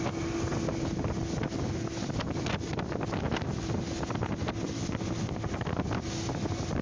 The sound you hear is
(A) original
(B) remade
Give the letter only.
A